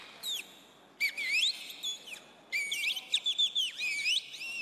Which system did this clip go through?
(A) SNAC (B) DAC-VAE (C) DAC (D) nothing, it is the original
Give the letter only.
D